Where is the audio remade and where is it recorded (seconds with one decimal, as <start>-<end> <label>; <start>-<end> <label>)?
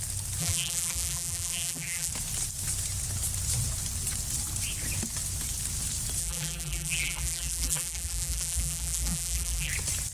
0.0-0.4 recorded; 0.4-2.1 remade; 2.1-6.2 recorded; 6.2-9.7 remade; 9.7-10.1 recorded